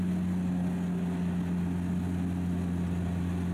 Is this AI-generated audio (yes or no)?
no